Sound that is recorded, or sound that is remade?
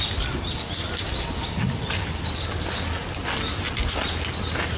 recorded